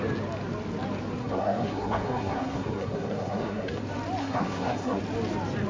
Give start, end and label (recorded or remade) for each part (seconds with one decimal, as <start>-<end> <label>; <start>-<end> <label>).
0.0-1.2 recorded; 1.2-3.8 remade; 3.8-4.2 recorded; 4.2-5.0 remade; 5.0-5.7 recorded

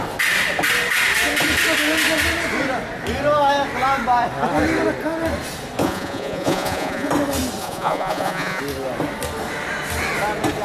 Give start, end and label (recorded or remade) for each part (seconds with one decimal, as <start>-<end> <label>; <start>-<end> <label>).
0.0-5.8 recorded; 5.8-7.1 remade; 7.1-7.6 recorded; 7.6-8.6 remade; 8.6-10.6 recorded

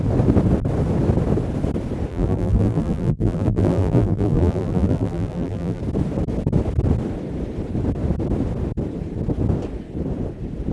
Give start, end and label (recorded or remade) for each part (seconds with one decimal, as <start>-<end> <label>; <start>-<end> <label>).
0.0-2.1 recorded; 2.1-5.8 remade; 5.8-10.7 recorded

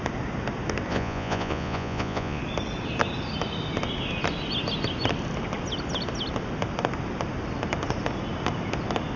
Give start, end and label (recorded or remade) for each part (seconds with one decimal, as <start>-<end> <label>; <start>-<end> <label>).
0.0-0.9 recorded; 0.9-2.4 remade; 2.4-9.2 recorded

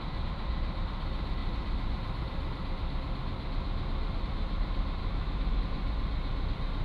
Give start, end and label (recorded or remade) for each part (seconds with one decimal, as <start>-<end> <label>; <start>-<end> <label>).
0.0-5.0 recorded; 5.0-5.6 remade; 5.6-6.8 recorded

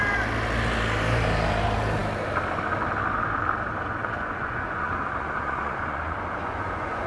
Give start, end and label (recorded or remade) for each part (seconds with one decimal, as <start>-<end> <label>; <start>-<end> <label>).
0.0-4.0 recorded; 4.0-7.1 remade

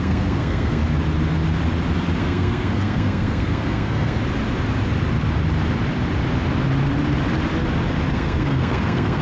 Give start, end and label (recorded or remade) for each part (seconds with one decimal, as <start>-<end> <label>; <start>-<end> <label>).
0.0-0.8 remade; 0.8-2.2 recorded; 2.2-4.2 remade; 4.2-8.1 recorded; 8.1-9.2 remade

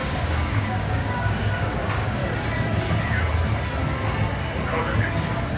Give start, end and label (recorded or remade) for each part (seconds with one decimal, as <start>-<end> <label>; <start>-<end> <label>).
0.0-2.2 remade; 2.2-5.6 recorded